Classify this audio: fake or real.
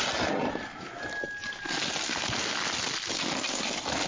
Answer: real